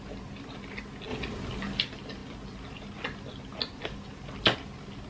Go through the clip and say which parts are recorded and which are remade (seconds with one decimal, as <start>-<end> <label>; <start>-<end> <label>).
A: 0.0-5.1 recorded